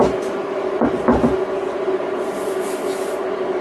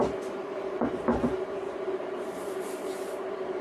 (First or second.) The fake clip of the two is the second